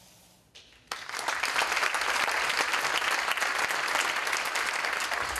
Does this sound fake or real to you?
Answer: real